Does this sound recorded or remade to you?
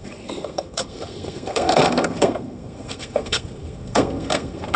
remade